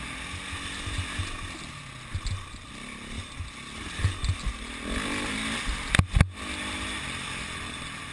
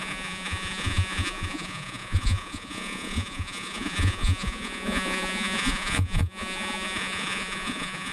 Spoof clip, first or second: second